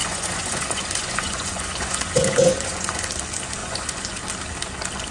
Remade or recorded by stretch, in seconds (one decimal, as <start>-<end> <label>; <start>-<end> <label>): 0.0-3.1 remade; 3.1-3.6 recorded; 3.6-4.2 remade; 4.2-5.1 recorded

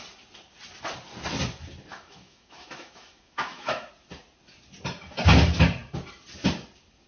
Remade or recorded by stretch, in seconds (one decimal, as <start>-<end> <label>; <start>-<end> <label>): 0.0-1.9 recorded; 1.9-3.9 remade; 3.9-7.1 recorded

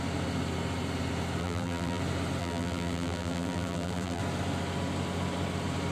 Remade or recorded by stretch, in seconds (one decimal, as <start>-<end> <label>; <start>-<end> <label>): 0.0-1.4 recorded; 1.4-2.0 remade; 2.0-2.4 recorded; 2.4-4.2 remade; 4.2-5.9 recorded

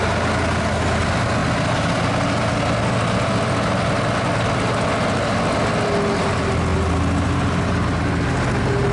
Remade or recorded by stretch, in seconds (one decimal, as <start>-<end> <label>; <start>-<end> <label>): 0.0-8.9 recorded

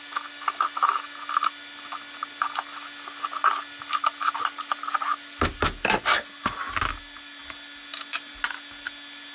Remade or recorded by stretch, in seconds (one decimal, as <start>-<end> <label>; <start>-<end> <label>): 0.0-9.3 recorded

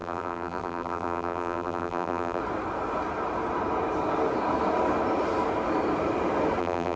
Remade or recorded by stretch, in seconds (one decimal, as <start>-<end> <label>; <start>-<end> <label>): 0.0-2.4 remade; 2.4-6.6 recorded; 6.6-7.0 remade